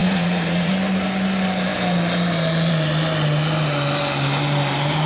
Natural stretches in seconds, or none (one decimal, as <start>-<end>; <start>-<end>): 0.7-5.1